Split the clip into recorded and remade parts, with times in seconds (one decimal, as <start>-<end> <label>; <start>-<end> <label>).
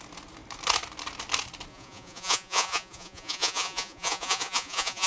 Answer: 0.0-1.7 recorded; 1.7-5.1 remade